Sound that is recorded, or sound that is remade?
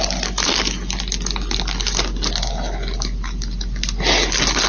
recorded